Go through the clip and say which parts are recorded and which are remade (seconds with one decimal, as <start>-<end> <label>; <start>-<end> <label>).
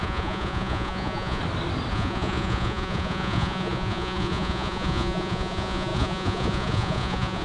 0.0-1.4 remade; 1.4-1.9 recorded; 1.9-7.4 remade